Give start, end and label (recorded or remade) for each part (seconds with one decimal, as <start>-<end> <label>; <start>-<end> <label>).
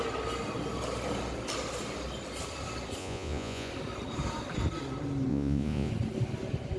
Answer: 0.0-3.0 recorded; 3.0-3.7 remade; 3.7-5.3 recorded; 5.3-5.9 remade; 5.9-6.8 recorded